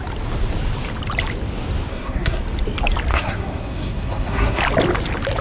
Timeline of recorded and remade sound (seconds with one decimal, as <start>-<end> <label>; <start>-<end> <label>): 0.0-1.9 recorded; 1.9-2.4 remade; 2.4-3.1 recorded; 3.1-4.6 remade; 4.6-5.4 recorded